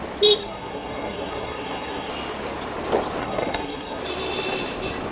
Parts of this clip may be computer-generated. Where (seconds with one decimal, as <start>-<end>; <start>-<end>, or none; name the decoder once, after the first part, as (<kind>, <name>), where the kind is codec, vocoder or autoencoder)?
0.4-2.1 (codec, SNAC); 3.2-4.0

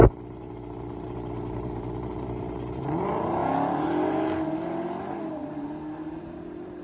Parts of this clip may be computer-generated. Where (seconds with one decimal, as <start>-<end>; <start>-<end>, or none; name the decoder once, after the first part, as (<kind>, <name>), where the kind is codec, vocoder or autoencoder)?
0.0-3.4 (vocoder, BigVGAN v2); 6.2-6.8